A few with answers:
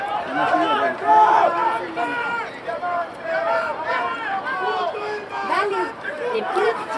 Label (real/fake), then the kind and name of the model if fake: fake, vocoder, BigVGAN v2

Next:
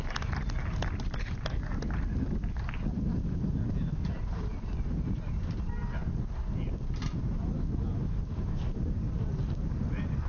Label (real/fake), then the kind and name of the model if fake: fake, vocoder, BigVGAN v2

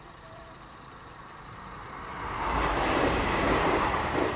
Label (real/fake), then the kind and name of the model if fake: fake, vocoder, BigVGAN v2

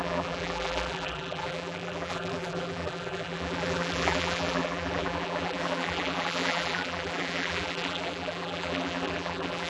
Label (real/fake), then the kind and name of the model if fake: fake, vocoder, BigVGAN v2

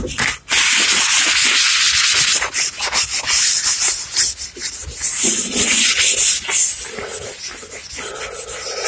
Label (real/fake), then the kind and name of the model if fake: real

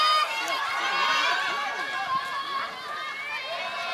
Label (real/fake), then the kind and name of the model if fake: real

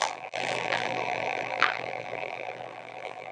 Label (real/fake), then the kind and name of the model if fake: fake, vocoder, BigVGAN v2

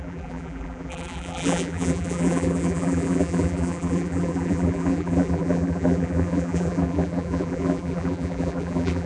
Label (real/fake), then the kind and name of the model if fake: fake, vocoder, BigVGAN v2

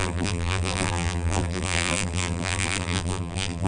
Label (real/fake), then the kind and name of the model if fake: fake, vocoder, BigVGAN v2